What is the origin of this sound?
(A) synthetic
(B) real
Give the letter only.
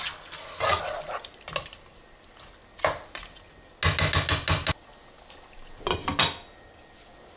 B